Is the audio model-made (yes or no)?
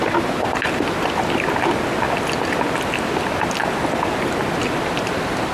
no